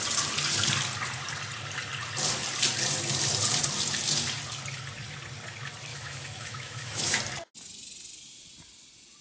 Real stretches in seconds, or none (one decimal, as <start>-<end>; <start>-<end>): 0.0-5.9; 7.2-9.2